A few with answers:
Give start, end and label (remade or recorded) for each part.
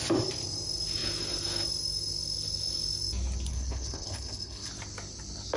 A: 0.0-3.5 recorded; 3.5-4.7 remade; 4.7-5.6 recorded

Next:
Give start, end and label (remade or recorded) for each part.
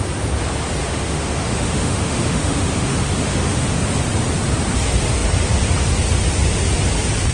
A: 0.0-0.8 recorded; 0.8-3.8 remade; 3.8-7.3 recorded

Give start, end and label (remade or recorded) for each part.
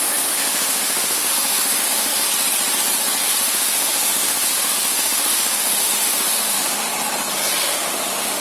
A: 0.0-2.3 remade; 2.3-3.2 recorded; 3.2-6.9 remade; 6.9-7.6 recorded; 7.6-8.4 remade